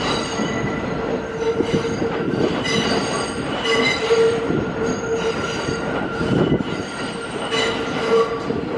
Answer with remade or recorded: recorded